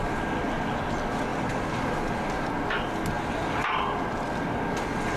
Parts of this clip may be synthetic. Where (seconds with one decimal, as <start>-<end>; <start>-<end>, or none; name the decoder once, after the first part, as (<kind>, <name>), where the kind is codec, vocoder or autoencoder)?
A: none